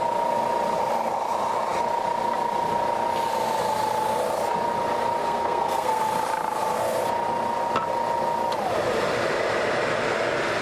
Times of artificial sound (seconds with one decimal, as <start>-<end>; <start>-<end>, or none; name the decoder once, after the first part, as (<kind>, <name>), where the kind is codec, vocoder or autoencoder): 5.2-6.0 (codec, SNAC)